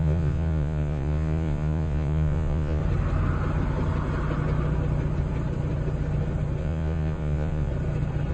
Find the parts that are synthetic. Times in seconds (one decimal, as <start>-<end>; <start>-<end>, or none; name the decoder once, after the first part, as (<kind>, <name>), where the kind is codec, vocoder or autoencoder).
0.0-2.8 (vocoder, Vocos); 6.6-7.7